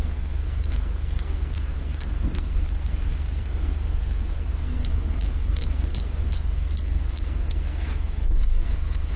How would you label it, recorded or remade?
remade